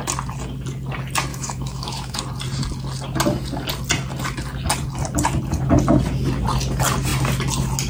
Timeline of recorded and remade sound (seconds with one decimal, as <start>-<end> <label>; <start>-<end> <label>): 0.0-1.3 recorded; 1.3-2.2 remade; 2.2-7.9 recorded